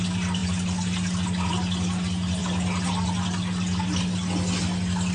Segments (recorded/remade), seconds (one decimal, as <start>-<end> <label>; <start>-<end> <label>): 0.0-5.1 recorded